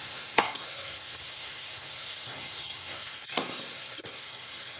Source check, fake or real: fake